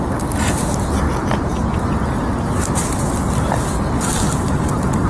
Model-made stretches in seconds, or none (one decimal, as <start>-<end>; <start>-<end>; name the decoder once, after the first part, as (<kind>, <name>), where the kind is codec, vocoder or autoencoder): none